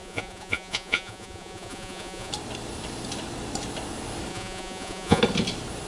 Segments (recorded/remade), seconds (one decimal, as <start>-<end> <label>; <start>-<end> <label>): 0.0-2.3 remade; 2.3-4.3 recorded; 4.3-5.2 remade; 5.2-5.9 recorded